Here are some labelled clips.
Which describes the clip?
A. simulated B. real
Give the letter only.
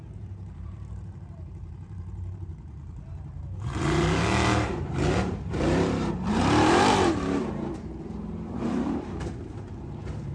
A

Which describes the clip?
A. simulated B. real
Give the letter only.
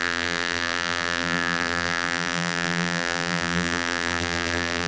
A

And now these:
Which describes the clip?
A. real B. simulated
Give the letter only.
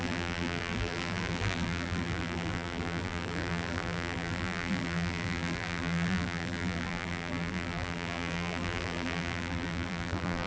B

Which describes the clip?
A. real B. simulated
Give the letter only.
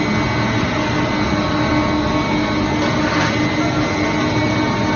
A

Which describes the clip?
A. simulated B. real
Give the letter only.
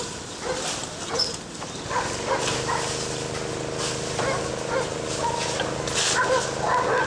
B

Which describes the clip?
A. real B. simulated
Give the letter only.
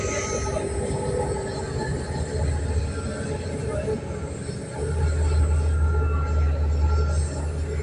A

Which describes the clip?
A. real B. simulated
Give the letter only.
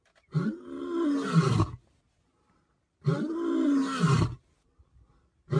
A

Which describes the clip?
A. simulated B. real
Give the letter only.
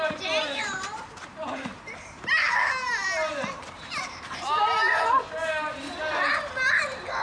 A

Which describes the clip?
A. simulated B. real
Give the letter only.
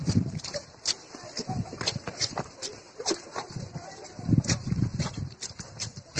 A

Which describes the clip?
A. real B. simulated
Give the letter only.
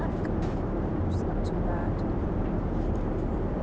B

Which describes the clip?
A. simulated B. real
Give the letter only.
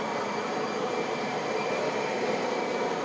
A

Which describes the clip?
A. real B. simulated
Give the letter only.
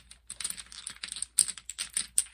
A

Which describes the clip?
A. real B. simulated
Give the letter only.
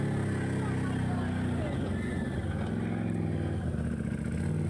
A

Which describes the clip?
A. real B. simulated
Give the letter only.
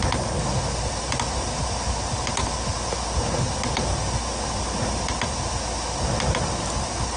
A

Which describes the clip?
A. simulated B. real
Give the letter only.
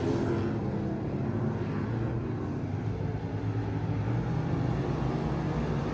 B